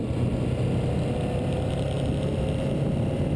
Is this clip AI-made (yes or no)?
no